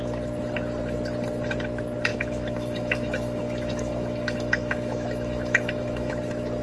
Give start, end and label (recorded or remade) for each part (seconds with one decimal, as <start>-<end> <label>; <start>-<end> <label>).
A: 0.0-2.1 recorded; 2.1-6.1 remade; 6.1-6.6 recorded